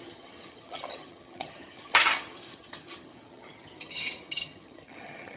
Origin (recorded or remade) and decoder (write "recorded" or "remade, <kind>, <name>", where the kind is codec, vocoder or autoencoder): remade, vocoder, HiFi-GAN